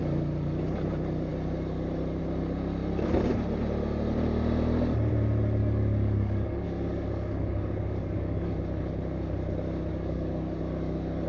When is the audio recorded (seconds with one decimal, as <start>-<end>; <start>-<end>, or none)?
0.0-5.6; 8.6-9.9; 10.6-11.3

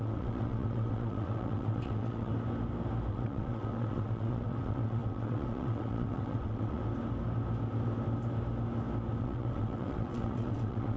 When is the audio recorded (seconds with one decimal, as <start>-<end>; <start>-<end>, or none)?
2.3-3.1; 6.8-9.2

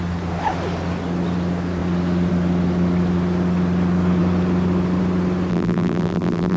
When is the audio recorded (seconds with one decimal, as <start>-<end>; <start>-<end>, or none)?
0.0-5.5

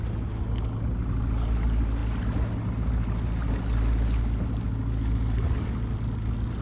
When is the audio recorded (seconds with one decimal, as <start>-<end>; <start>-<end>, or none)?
0.0-6.6

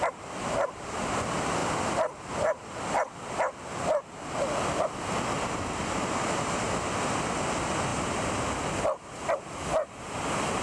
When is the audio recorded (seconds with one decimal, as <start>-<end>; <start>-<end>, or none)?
0.0-10.6

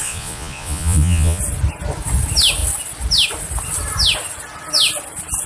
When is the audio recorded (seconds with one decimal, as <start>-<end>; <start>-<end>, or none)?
1.4-5.5

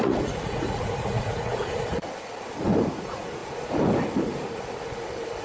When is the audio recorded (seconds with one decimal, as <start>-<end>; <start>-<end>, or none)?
2.0-2.9; 3.4-5.4

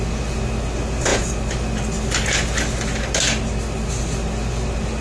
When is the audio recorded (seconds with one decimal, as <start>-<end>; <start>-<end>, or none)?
0.0-5.0